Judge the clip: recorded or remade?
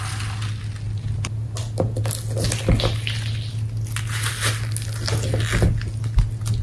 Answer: recorded